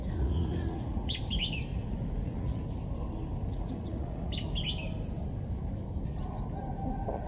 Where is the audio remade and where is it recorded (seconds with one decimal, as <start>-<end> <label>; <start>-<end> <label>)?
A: 0.0-1.2 remade; 1.2-1.7 recorded; 1.7-2.6 remade; 2.6-3.5 recorded; 3.5-4.3 remade; 4.3-7.3 recorded